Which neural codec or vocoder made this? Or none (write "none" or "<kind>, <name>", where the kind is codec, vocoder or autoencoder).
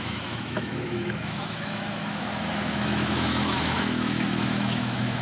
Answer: autoencoder, DAC-VAE